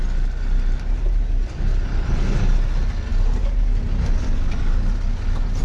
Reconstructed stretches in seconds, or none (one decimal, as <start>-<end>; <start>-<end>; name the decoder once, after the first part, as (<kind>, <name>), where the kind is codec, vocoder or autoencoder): none